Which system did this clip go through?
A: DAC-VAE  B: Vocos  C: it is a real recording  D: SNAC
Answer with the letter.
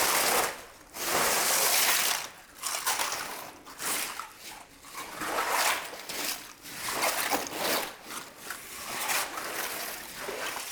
C